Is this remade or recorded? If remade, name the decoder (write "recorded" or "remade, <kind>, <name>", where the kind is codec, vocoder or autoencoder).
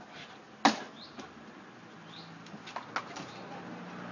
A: recorded